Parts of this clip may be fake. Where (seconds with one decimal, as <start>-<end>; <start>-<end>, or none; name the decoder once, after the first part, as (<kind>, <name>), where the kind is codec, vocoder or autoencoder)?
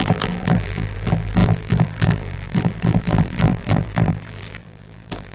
0.0-5.3 (vocoder, BigVGAN v2)